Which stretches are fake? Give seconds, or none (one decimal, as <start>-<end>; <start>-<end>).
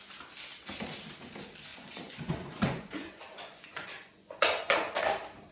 1.7-5.0